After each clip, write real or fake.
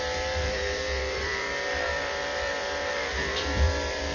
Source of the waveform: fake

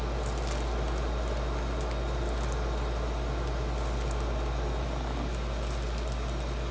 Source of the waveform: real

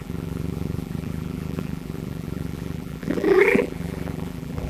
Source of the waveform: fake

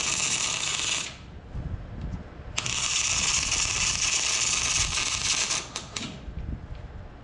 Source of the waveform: real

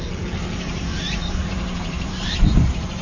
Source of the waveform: fake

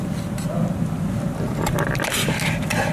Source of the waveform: real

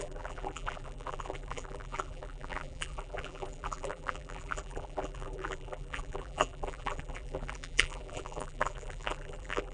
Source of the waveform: fake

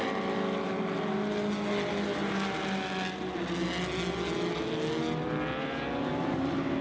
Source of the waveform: real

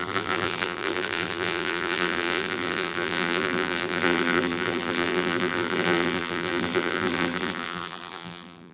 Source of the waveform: fake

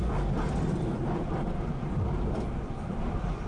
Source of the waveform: fake